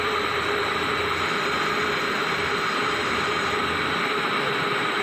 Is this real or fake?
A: fake